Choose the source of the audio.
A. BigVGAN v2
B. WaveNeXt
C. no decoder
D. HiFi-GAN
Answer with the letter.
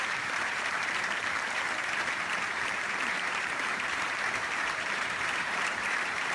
A